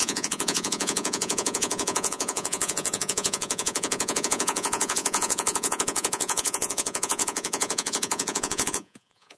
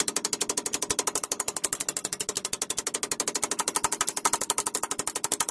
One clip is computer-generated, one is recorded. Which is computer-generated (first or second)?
first